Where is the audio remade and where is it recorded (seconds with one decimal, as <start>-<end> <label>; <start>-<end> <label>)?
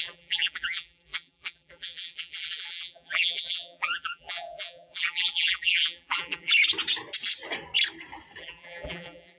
0.0-6.5 remade; 6.5-8.4 recorded; 8.4-9.4 remade